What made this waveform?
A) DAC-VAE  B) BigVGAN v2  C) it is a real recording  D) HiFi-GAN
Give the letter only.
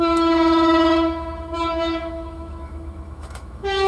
A